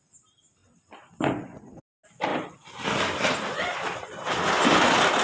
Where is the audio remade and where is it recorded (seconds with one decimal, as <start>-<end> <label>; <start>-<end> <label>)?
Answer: 0.0-5.2 recorded